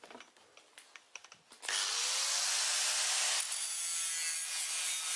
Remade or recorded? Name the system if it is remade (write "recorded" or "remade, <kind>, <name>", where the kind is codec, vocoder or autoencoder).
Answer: recorded